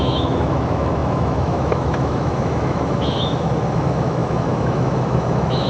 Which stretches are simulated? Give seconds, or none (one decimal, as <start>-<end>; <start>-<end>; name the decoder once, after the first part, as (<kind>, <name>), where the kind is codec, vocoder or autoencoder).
0.0-5.7 (autoencoder, DAC-VAE)